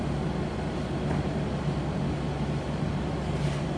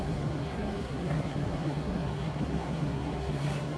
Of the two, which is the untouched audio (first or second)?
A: first